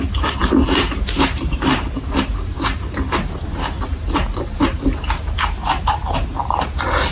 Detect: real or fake fake